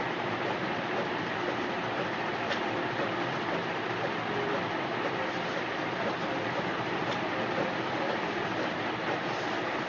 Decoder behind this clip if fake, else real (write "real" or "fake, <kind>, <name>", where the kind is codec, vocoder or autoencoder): real